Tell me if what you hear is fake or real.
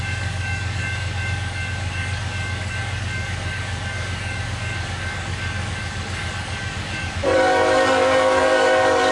fake